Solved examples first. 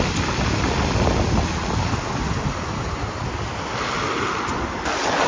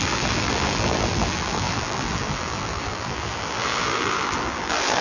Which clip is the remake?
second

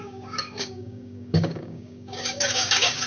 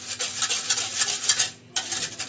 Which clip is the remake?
first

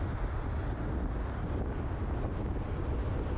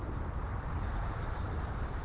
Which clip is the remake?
second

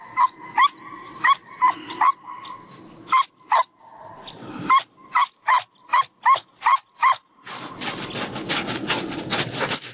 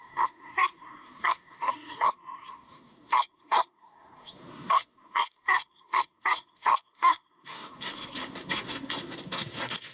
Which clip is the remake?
second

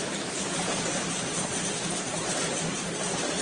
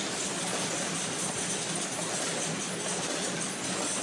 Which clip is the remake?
first